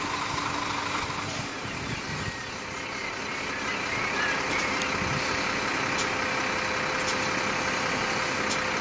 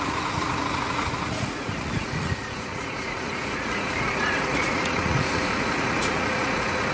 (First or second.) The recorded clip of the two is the first